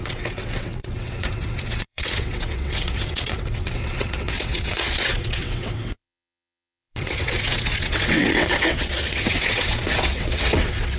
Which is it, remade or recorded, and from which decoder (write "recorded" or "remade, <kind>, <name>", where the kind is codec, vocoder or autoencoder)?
remade, vocoder, WaveNeXt